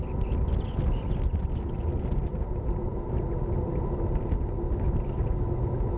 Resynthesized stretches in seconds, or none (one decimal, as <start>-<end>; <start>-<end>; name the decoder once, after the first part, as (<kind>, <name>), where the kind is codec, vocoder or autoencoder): none